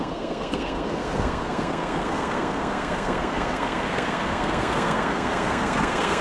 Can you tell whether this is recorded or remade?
remade